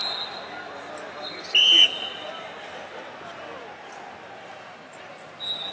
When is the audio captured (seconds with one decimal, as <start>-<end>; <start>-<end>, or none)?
0.0-5.7